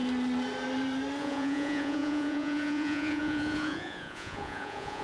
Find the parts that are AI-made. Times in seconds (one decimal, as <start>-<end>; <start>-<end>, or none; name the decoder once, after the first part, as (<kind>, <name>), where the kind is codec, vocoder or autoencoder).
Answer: 1.2-5.0 (vocoder, Vocos)